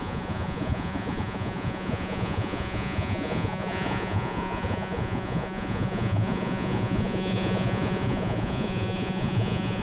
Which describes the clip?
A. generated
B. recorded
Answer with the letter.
A